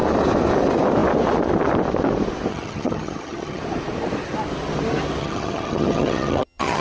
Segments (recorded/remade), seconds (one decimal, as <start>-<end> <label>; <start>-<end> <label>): 0.0-2.5 recorded; 2.5-3.6 remade; 3.6-5.2 recorded; 5.2-6.8 remade

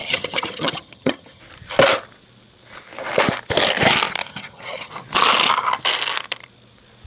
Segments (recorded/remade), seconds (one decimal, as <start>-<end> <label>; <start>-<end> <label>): 0.0-1.4 remade; 1.4-4.2 recorded; 4.2-4.9 remade; 4.9-7.1 recorded